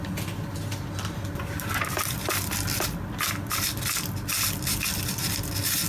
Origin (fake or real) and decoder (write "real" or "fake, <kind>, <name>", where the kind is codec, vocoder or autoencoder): real